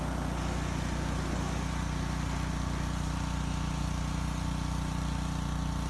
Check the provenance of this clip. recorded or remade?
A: recorded